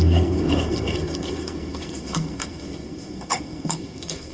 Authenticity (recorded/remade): remade